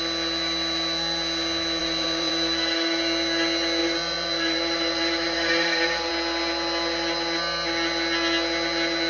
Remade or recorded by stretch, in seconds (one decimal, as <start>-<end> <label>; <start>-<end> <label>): 0.0-1.8 recorded; 1.8-2.3 remade; 2.3-3.8 recorded; 3.8-6.1 remade; 6.1-9.1 recorded